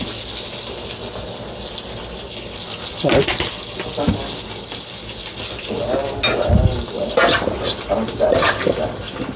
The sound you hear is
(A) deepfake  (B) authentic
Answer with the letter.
B